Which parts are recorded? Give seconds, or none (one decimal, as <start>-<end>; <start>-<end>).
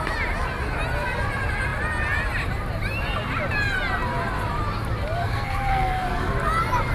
0.0-5.2; 6.3-6.9